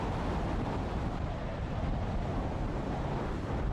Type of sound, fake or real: real